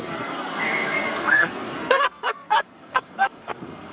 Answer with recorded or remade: remade